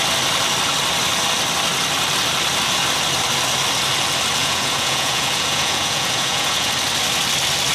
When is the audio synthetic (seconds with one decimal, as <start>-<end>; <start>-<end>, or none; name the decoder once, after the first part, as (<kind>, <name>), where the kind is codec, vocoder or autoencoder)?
4.4-6.7 (vocoder, Vocos)